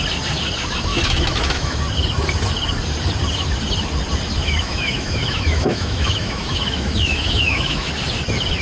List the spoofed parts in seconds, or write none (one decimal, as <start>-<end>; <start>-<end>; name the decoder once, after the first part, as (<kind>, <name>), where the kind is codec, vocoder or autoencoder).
0.9-1.8 (autoencoder, DAC-VAE); 4.4-7.9